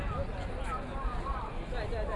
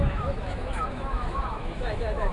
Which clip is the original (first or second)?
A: first